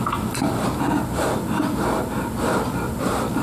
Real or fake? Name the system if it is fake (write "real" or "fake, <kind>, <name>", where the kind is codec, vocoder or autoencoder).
real